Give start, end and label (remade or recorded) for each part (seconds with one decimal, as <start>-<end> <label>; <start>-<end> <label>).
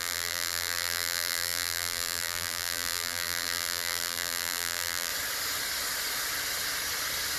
0.0-5.1 remade; 5.1-7.4 recorded